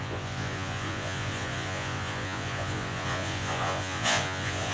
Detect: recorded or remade remade